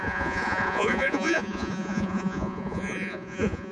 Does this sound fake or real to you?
fake